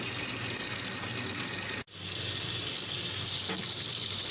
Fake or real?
real